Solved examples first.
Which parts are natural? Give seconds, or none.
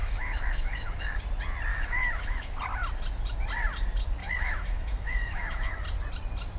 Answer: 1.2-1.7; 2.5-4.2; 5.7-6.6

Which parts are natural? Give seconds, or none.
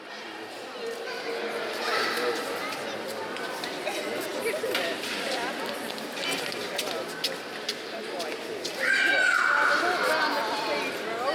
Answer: 0.0-11.3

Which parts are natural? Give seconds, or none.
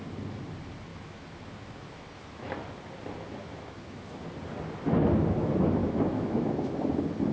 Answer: 0.0-0.9; 2.5-3.4; 4.1-5.8; 6.7-7.3